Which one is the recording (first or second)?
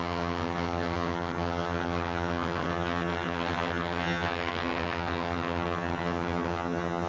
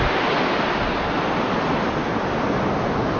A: second